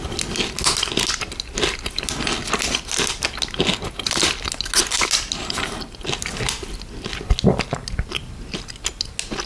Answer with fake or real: real